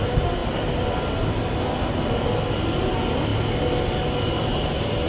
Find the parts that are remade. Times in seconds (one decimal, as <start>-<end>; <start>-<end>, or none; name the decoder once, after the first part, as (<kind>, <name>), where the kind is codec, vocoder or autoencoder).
none